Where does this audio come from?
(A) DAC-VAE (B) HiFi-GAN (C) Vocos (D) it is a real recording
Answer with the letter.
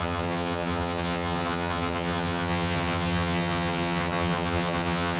B